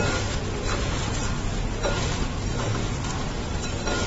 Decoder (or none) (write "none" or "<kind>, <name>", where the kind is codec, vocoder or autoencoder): none